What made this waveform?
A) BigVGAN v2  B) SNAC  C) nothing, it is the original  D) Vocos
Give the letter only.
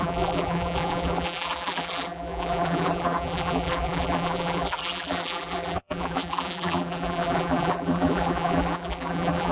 A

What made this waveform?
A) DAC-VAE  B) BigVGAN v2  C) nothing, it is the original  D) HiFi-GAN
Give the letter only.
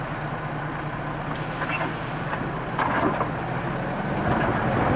C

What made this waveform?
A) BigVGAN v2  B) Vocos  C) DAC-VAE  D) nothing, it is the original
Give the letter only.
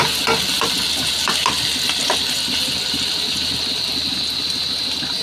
D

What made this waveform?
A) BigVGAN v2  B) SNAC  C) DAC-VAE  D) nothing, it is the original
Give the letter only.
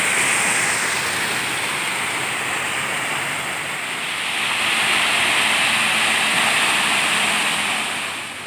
D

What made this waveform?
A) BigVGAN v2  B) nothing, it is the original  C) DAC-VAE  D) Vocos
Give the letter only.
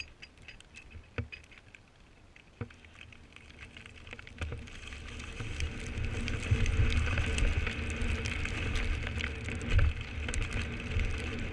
B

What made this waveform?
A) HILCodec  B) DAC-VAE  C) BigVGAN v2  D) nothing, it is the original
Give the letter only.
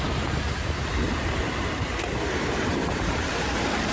C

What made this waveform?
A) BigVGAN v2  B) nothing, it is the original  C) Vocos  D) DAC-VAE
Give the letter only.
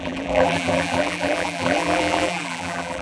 A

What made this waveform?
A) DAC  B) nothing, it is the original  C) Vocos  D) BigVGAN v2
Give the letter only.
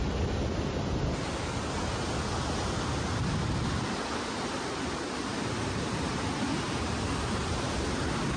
B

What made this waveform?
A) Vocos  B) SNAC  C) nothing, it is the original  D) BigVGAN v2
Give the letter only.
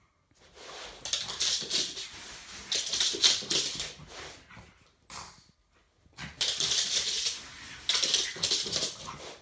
C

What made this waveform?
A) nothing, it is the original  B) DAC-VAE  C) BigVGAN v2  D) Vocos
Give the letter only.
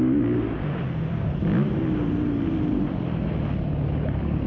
A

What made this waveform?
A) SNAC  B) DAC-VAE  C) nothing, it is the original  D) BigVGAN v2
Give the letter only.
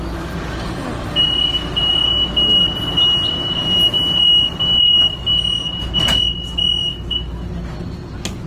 C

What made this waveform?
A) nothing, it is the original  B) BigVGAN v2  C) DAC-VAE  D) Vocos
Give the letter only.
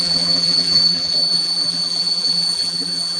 B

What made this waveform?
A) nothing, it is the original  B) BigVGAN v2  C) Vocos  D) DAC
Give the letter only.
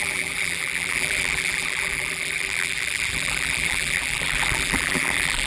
B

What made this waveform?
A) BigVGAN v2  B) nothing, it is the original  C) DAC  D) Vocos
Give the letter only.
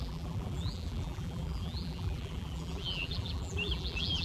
A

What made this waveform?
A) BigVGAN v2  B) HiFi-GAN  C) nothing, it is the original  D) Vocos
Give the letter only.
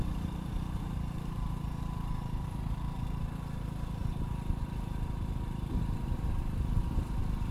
A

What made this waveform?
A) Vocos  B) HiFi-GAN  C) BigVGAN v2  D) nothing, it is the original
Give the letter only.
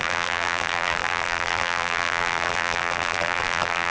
C